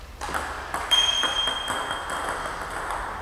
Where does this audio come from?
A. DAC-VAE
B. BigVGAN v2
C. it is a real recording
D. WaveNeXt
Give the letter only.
C